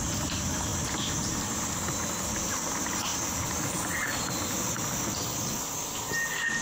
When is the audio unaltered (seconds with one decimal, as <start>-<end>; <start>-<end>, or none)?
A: 0.0-6.6